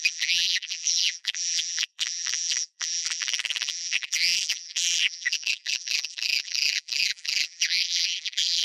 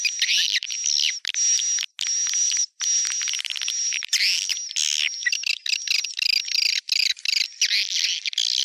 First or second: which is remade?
first